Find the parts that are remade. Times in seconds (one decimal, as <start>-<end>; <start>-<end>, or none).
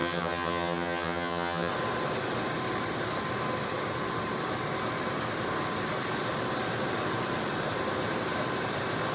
0.0-1.7